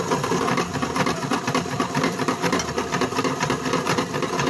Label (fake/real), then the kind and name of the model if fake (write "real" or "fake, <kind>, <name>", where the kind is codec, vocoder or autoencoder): fake, vocoder, BigVGAN v2